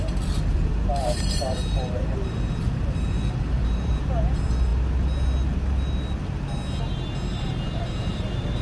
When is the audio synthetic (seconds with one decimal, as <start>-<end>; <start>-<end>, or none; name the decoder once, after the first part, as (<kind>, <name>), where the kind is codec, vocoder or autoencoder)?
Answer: 0.5-3.9 (vocoder, BigVGAN v2); 7.3-8.6